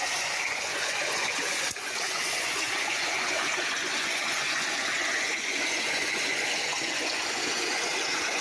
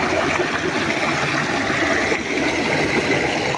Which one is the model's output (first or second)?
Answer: first